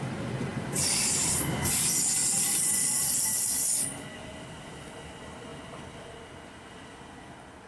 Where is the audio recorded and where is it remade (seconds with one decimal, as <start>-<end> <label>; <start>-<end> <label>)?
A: 0.0-2.2 recorded; 2.2-5.1 remade; 5.1-7.7 recorded